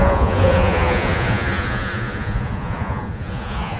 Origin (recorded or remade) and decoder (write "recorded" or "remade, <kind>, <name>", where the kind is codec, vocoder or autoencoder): remade, vocoder, Vocos